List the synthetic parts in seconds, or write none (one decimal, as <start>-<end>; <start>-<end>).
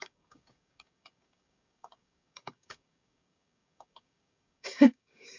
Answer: 0.0-5.4